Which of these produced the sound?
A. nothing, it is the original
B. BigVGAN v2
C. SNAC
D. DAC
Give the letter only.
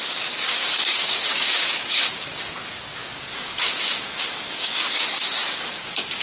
D